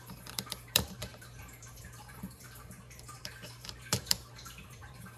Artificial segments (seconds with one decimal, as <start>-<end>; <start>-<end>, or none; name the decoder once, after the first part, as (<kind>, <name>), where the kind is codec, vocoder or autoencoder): 0.0-5.2 (vocoder, BigVGAN v2)